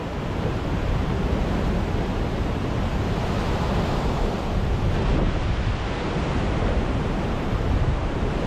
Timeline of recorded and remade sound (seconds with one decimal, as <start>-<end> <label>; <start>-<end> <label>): 0.0-1.1 remade; 1.1-3.2 recorded; 3.2-4.5 remade; 4.5-6.2 recorded; 6.2-8.5 remade